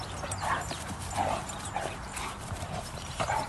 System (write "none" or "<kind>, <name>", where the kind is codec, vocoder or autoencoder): vocoder, BigVGAN v2